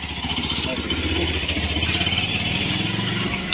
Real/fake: real